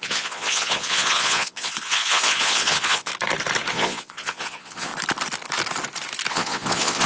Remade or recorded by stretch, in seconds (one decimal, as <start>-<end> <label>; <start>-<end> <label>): 0.0-3.1 remade; 3.1-3.7 recorded; 3.7-4.9 remade; 4.9-6.3 recorded; 6.3-7.1 remade